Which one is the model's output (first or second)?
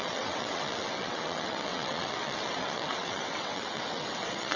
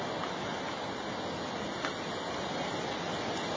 first